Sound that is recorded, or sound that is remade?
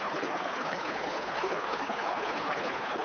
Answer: remade